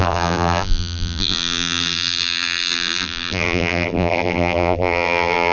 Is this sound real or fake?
fake